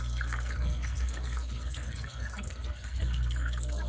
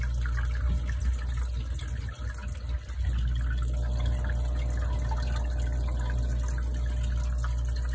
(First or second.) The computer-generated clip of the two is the first